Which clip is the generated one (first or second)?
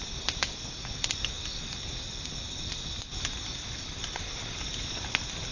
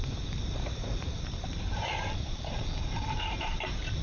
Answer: second